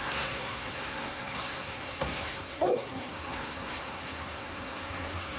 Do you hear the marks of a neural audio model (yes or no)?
yes